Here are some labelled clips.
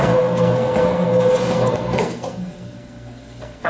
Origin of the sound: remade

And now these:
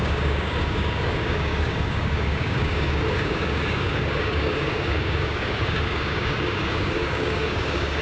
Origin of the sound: remade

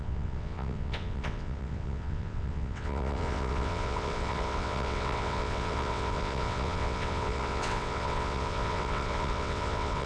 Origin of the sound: remade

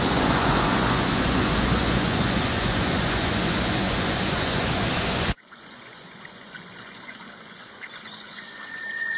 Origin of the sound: remade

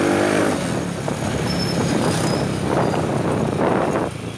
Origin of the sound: recorded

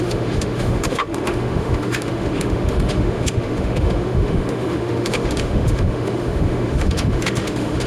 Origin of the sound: remade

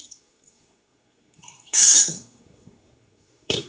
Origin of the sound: remade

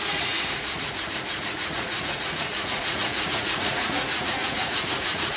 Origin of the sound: remade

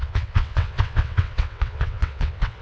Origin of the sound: remade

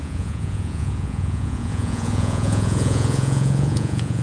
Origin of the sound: remade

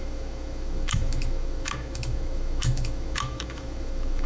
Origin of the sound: remade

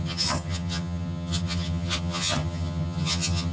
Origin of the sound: remade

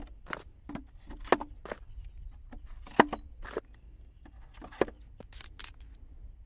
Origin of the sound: recorded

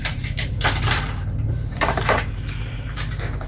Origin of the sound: remade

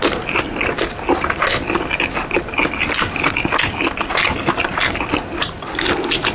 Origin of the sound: recorded